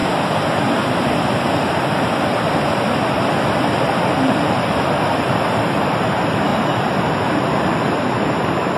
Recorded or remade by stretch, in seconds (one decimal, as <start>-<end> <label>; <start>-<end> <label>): 0.0-4.2 recorded; 4.2-6.5 remade; 6.5-7.1 recorded; 7.1-8.8 remade